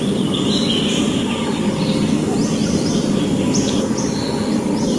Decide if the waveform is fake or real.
real